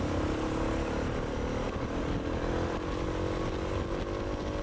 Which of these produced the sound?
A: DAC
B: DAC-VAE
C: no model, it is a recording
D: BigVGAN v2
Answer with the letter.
C